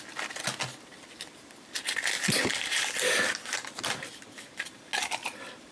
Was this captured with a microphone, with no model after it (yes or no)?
yes